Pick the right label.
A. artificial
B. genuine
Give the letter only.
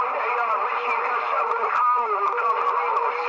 A